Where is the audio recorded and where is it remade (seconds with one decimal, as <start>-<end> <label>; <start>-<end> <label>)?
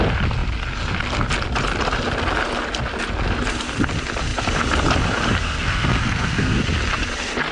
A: 0.0-5.4 recorded; 5.4-6.6 remade; 6.6-7.5 recorded